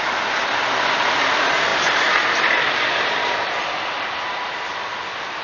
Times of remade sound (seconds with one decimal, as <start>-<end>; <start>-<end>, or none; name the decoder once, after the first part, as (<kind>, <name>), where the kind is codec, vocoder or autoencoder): none